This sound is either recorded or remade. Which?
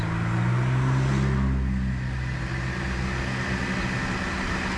recorded